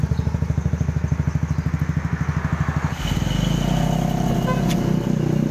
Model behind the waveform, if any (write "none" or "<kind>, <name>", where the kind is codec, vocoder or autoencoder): none